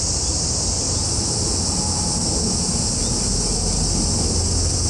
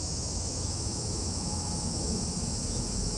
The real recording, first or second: first